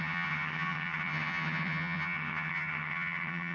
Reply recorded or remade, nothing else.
remade